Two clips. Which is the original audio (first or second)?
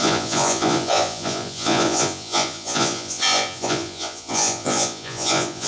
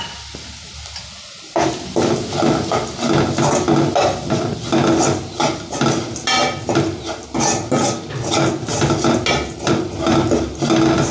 second